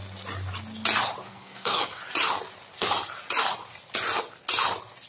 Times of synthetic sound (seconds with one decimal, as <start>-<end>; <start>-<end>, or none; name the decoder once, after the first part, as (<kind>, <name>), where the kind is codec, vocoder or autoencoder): 1.3-2.0 (codec, SNAC)